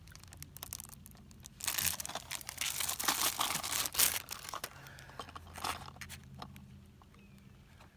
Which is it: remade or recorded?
recorded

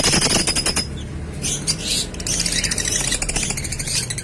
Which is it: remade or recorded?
recorded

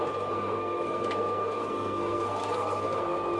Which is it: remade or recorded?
remade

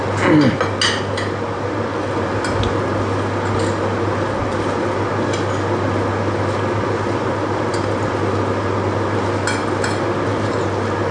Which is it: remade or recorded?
recorded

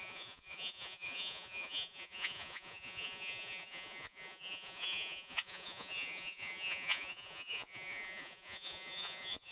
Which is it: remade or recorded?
remade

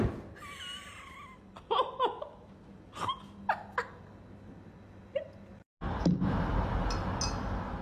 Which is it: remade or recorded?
recorded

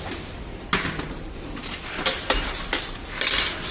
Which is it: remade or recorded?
recorded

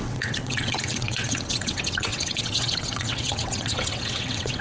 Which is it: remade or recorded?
remade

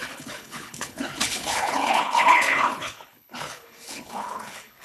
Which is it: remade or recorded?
remade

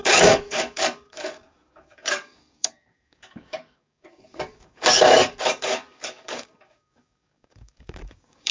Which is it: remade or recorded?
remade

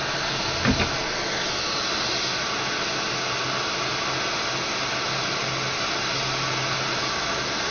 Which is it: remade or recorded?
recorded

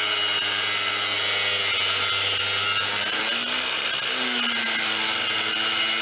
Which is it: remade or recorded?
recorded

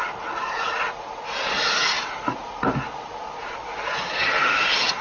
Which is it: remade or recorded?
recorded